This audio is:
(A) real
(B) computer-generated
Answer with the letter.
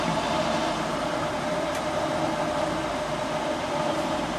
B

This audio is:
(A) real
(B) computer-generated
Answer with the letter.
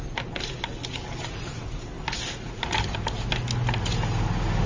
A